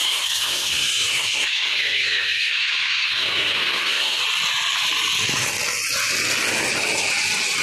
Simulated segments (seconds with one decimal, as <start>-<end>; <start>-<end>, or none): 0.0-4.2